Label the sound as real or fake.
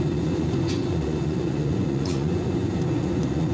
fake